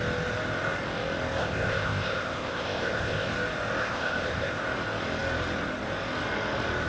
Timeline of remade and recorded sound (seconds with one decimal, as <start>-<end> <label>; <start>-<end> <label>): 0.0-1.4 recorded; 1.4-3.3 remade; 3.3-3.8 recorded; 3.8-4.6 remade; 4.6-6.9 recorded